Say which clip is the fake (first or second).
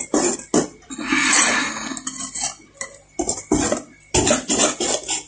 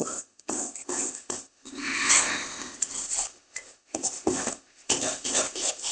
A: second